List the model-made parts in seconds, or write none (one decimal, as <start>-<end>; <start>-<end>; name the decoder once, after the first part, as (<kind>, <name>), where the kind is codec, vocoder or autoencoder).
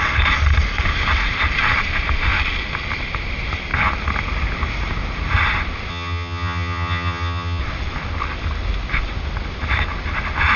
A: 5.9-7.6 (vocoder, HiFi-GAN)